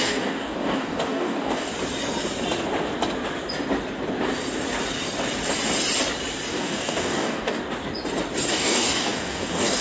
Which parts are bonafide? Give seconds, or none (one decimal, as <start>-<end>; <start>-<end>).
1.7-6.5; 7.6-8.5